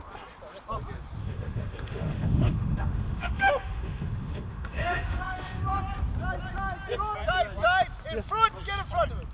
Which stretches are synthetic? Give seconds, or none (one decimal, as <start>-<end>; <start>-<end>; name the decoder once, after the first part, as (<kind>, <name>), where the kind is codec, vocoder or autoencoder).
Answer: 1.2-5.8 (autoencoder, DAC-VAE)